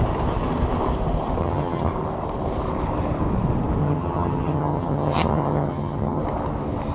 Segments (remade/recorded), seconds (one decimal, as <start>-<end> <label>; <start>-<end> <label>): 0.0-1.4 recorded; 1.4-1.9 remade; 1.9-3.8 recorded; 3.8-6.2 remade; 6.2-6.9 recorded